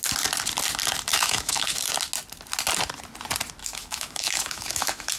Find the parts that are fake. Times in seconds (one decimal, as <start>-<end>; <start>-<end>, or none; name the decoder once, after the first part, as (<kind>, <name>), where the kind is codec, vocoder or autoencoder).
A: 1.1-1.8 (autoencoder, DAC-VAE); 3.6-5.2